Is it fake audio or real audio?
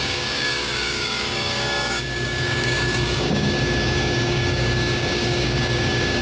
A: fake